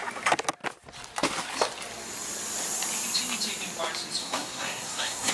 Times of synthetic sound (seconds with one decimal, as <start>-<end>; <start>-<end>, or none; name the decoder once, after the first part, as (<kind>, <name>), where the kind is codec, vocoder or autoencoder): 4.2-5.3 (codec, SNAC)